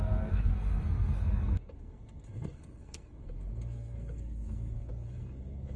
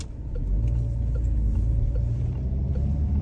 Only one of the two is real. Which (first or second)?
second